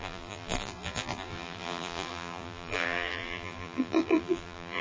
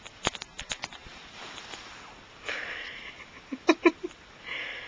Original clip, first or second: second